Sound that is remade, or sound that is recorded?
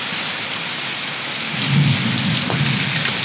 recorded